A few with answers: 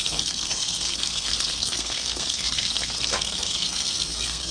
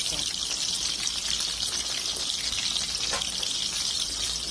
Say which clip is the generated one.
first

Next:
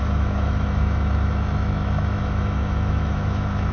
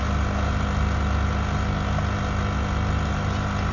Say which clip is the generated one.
first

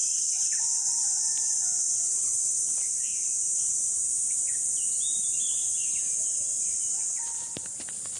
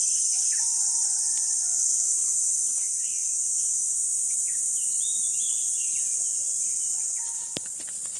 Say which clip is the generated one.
second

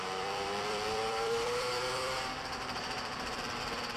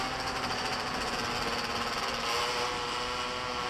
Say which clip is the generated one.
first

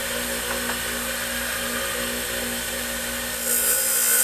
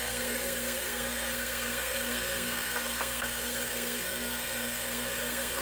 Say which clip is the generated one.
second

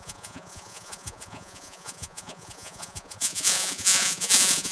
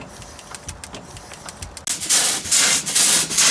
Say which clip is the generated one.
first